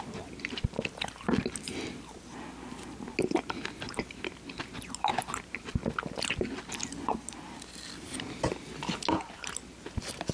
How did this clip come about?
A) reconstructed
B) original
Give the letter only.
B